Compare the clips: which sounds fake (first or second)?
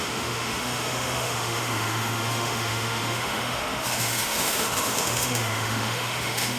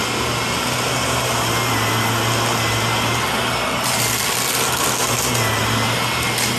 first